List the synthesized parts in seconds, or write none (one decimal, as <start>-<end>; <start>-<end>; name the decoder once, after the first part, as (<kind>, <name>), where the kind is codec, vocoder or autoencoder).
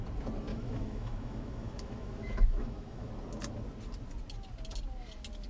0.5-3.1 (autoencoder, DAC-VAE)